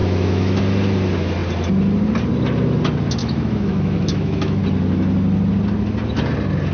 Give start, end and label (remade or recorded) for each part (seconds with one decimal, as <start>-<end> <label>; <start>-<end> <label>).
0.0-0.6 remade; 0.6-3.2 recorded; 3.2-4.6 remade; 4.6-6.7 recorded